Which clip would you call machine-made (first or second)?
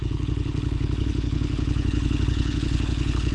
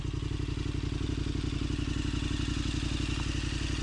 first